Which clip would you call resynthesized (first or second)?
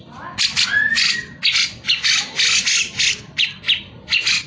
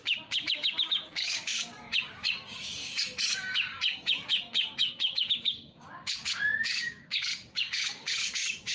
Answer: second